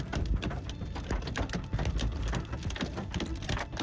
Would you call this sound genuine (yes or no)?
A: no